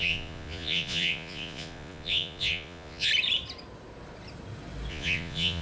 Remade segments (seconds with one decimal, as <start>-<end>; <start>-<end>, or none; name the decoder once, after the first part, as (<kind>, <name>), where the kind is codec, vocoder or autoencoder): 0.0-3.1 (vocoder, Vocos); 4.9-5.6